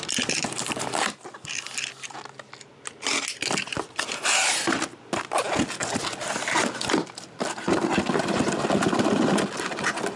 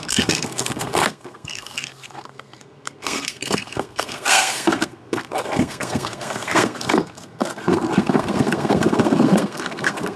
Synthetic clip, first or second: second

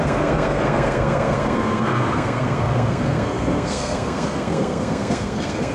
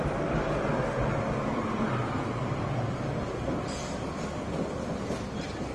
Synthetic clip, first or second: first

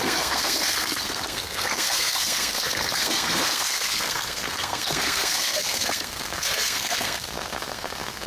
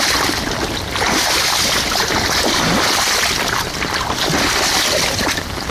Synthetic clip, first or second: first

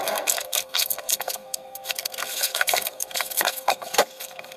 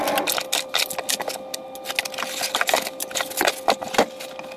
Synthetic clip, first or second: first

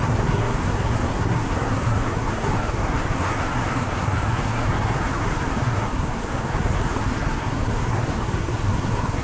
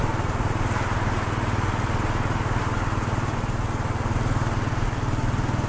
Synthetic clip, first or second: first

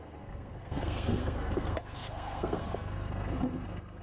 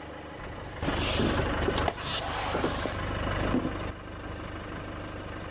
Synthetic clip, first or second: first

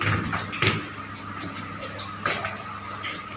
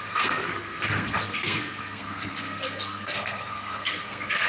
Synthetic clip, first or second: second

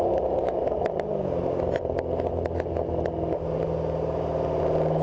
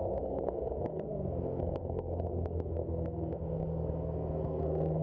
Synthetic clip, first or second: second